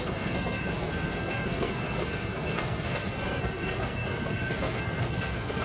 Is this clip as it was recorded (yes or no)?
no